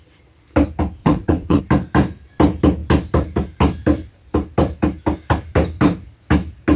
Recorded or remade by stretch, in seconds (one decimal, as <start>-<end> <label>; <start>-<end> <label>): 0.0-1.0 recorded; 1.0-1.6 remade; 1.6-6.8 recorded